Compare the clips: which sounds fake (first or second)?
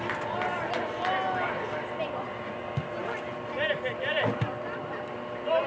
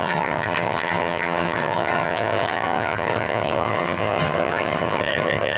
second